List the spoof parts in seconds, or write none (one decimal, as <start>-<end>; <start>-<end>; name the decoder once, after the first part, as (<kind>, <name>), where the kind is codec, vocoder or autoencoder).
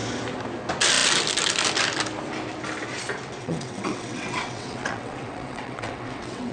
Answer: 3.4-6.5 (vocoder, WaveNeXt)